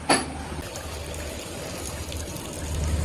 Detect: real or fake real